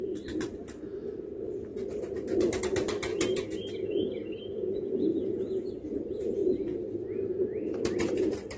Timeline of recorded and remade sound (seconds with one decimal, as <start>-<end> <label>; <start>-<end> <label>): 0.0-3.1 remade; 3.1-3.7 recorded; 3.7-8.6 remade